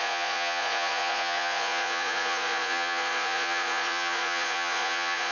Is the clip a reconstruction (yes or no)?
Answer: yes